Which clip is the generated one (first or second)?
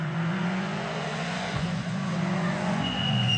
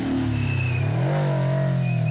first